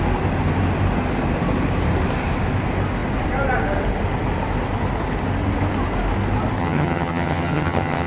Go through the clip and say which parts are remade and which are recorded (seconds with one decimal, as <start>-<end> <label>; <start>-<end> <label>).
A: 0.0-6.6 recorded; 6.6-8.1 remade